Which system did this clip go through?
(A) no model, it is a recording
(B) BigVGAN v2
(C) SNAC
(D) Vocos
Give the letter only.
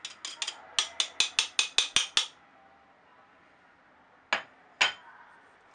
A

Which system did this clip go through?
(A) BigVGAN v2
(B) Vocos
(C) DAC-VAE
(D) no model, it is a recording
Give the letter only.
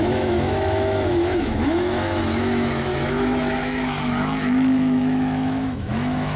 C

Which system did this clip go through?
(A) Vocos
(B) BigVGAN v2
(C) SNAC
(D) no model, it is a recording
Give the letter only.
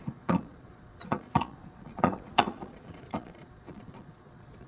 A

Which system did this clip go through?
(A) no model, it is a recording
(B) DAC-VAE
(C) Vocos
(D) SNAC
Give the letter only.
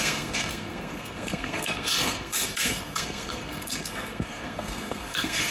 D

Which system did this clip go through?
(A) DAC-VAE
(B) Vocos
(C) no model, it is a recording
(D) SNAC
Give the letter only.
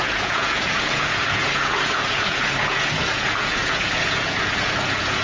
B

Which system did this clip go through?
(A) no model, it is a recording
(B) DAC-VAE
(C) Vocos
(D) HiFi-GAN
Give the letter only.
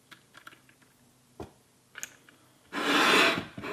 A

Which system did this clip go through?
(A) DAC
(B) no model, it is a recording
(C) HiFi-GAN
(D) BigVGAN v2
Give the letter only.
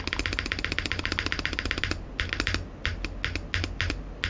B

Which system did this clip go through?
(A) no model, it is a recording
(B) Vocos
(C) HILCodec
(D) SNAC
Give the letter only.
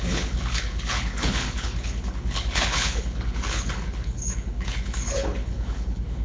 C